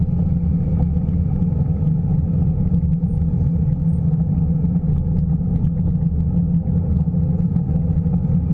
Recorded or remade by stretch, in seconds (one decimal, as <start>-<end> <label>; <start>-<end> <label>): 0.0-8.5 recorded